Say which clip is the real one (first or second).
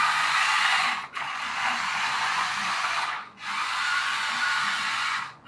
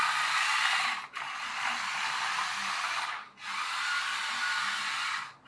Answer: second